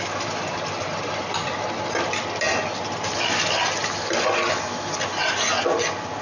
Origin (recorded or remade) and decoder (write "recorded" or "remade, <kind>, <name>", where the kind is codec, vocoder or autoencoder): recorded